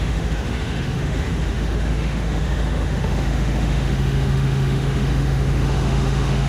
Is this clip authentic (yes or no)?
no